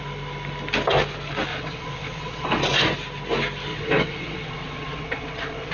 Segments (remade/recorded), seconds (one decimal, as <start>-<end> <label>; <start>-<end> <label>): 0.0-1.5 recorded; 1.5-2.6 remade; 2.6-3.7 recorded; 3.7-5.7 remade